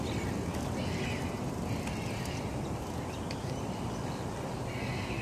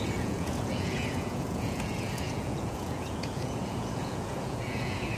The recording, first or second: first